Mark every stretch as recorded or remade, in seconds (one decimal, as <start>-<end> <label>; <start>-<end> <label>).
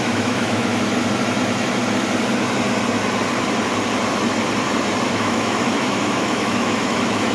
0.0-0.7 remade; 0.7-5.1 recorded; 5.1-7.3 remade